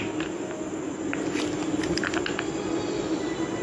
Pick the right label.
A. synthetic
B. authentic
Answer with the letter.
B